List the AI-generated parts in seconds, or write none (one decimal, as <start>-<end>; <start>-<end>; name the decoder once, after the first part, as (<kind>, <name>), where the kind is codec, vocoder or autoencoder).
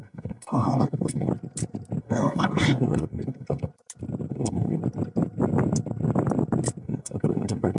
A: 0.0-1.3 (codec, SNAC); 2.0-3.7; 4.3-4.8; 6.8-7.8